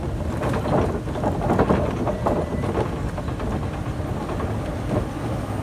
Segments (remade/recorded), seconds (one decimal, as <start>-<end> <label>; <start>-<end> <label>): 0.0-5.6 recorded